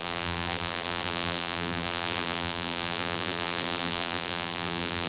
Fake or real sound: fake